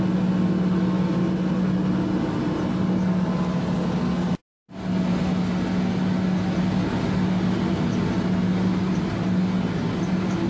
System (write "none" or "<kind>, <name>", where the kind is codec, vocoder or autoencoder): none